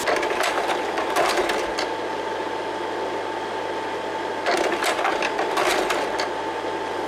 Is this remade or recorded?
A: recorded